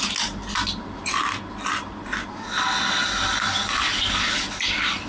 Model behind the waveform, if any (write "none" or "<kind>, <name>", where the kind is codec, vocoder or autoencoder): none